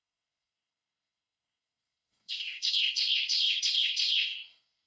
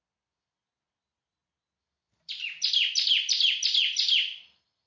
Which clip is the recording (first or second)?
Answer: second